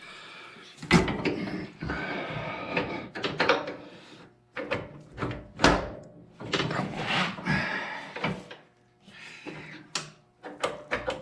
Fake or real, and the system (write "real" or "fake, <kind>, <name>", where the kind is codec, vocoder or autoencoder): real